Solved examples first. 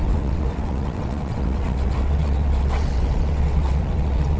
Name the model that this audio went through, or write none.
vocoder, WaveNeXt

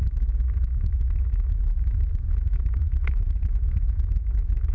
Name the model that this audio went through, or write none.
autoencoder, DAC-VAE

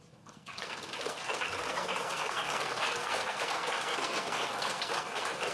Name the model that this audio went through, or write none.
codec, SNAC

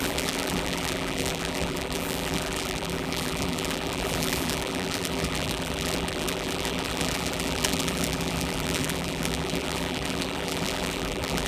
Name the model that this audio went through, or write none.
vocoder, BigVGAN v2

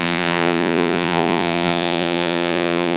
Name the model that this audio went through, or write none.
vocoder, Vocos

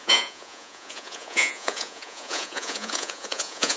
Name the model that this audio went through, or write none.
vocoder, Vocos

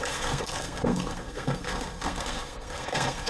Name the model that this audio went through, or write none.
codec, SNAC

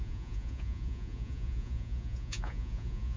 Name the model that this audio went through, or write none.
vocoder, Vocos